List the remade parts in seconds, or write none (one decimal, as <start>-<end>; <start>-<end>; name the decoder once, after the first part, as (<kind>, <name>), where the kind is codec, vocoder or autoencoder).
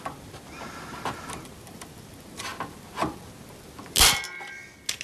none